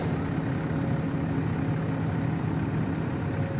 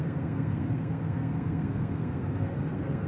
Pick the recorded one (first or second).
first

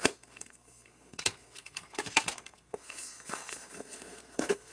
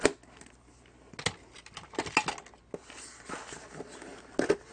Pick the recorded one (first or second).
second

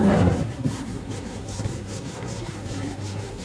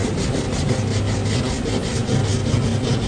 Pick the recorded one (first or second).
second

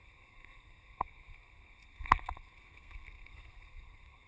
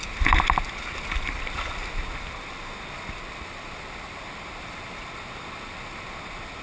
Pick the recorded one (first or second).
second